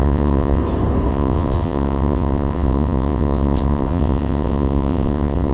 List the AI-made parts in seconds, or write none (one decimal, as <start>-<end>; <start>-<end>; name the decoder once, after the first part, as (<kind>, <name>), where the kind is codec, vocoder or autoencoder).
0.0-0.6 (vocoder, WaveNeXt); 1.1-5.5